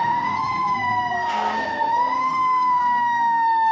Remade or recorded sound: remade